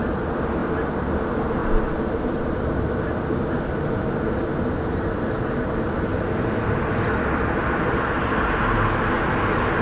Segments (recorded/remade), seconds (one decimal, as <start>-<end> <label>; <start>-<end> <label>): 0.0-6.1 recorded; 6.1-9.8 remade